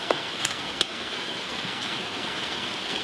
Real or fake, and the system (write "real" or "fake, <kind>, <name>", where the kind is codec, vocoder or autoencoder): fake, codec, SNAC